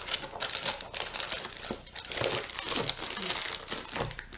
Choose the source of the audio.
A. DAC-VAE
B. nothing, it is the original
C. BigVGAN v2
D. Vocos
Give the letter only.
B